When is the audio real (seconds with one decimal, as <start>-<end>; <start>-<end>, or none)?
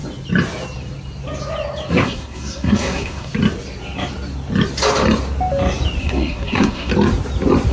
0.0-1.9; 3.3-6.0; 6.9-7.7